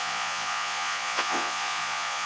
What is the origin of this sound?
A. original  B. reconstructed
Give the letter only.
B